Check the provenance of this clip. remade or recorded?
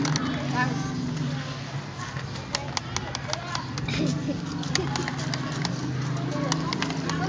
recorded